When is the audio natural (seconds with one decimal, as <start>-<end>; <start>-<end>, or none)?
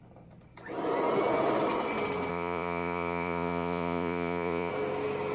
0.0-2.3; 4.7-5.3